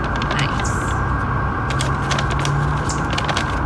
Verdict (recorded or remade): recorded